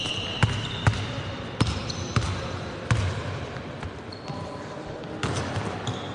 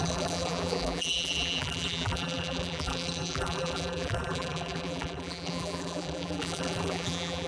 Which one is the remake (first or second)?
second